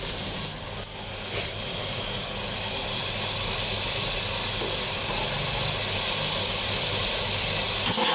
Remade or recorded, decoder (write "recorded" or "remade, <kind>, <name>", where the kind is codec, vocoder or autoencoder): recorded